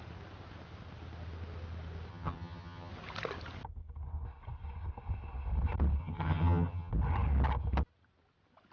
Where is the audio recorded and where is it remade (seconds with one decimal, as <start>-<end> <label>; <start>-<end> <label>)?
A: 0.0-2.1 recorded; 2.1-2.9 remade; 2.9-6.0 recorded; 6.0-6.9 remade; 6.9-8.7 recorded